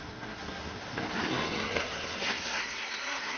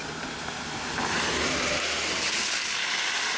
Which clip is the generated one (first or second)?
first